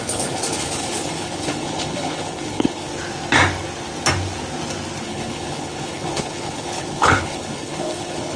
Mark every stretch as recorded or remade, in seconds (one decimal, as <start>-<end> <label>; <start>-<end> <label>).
0.0-2.9 remade; 2.9-5.0 recorded; 5.0-8.4 remade

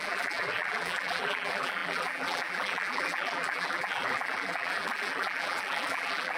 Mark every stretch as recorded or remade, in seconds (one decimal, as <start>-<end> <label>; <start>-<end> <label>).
0.0-6.4 remade

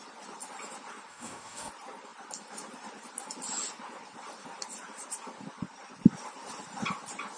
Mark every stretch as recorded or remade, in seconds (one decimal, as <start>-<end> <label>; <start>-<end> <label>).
0.0-1.1 recorded; 1.1-1.7 remade; 1.7-7.4 recorded

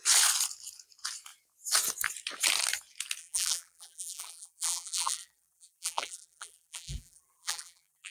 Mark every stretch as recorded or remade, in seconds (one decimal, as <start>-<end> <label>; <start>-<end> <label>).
0.0-3.2 recorded; 3.2-8.1 remade

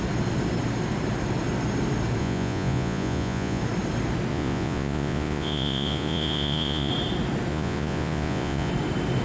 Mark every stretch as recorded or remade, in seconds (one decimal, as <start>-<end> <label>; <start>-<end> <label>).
0.0-2.2 recorded; 2.2-3.6 remade; 3.6-4.3 recorded; 4.3-6.9 remade; 6.9-7.5 recorded; 7.5-8.7 remade; 8.7-9.2 recorded

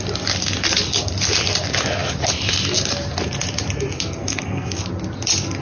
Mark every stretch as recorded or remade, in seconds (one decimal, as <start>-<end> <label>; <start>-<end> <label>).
0.0-4.2 recorded; 4.2-4.8 remade; 4.8-5.6 recorded

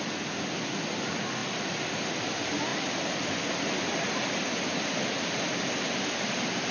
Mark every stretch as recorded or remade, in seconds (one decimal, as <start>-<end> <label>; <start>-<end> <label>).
0.0-1.4 recorded; 1.4-2.0 remade; 2.0-2.7 recorded; 2.7-3.2 remade; 3.2-6.7 recorded